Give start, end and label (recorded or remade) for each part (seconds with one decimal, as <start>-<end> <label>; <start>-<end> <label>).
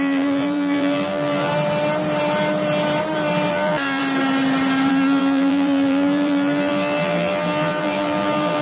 0.0-1.5 remade; 1.5-3.5 recorded; 3.5-4.0 remade; 4.0-4.9 recorded; 4.9-8.6 remade